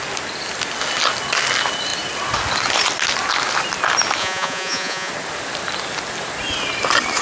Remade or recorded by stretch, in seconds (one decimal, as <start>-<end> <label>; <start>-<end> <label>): 0.0-4.2 recorded; 4.2-5.1 remade; 5.1-7.2 recorded